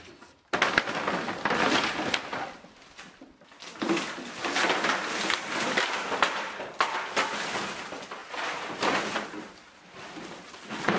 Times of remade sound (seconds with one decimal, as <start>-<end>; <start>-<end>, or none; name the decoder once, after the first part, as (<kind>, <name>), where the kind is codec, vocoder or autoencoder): 5.0-7.1 (vocoder, BigVGAN v2); 8.2-11.0